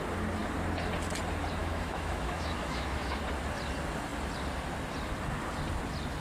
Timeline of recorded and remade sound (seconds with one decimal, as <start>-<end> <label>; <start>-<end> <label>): 0.0-1.6 recorded; 1.6-3.2 remade; 3.2-6.2 recorded

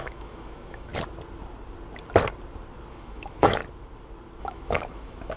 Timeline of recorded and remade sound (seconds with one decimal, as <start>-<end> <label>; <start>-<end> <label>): 0.0-0.9 remade; 0.9-2.9 recorded; 2.9-3.6 remade; 3.6-4.4 recorded; 4.4-5.4 remade

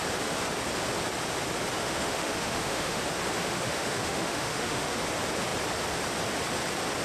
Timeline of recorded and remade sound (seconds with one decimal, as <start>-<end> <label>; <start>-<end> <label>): 0.0-1.8 recorded; 1.8-3.0 remade; 3.0-3.4 recorded; 3.4-5.0 remade; 5.0-7.0 recorded

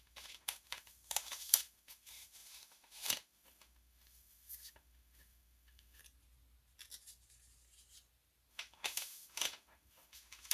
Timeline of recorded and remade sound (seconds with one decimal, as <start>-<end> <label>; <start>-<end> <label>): 0.0-6.0 remade; 6.0-8.5 recorded; 8.5-10.5 remade

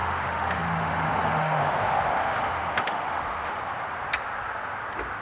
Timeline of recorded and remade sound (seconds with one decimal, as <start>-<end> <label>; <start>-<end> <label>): 0.0-1.6 remade; 1.6-2.1 recorded; 2.1-3.6 remade; 3.6-5.2 recorded